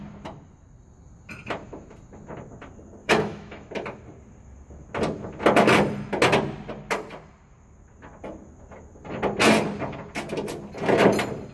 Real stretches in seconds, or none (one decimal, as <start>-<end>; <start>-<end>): 0.0-3.0; 3.7-11.5